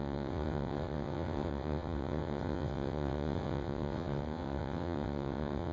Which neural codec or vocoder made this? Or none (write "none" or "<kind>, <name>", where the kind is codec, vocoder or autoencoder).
vocoder, WaveNeXt